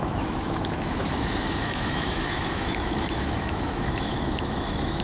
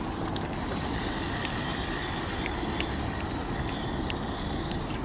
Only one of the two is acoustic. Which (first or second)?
second